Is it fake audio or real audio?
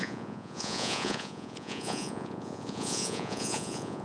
fake